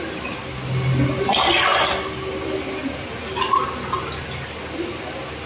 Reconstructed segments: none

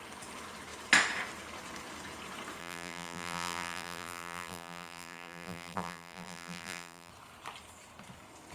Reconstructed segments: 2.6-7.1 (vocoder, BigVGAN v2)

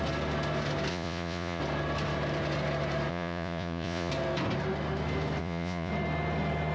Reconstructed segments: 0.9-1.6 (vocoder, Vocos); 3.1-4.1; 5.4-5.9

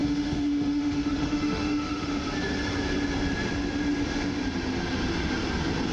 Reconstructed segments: 0.0-2.1 (autoencoder, DAC-VAE)

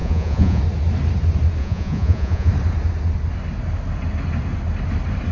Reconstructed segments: 0.0-0.6 (vocoder, Vocos); 1.6-2.5